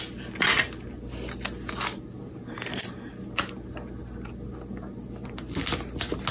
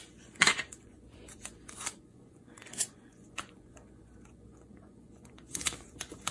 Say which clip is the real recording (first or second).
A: first